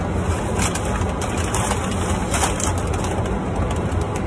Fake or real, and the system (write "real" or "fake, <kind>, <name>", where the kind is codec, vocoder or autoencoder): real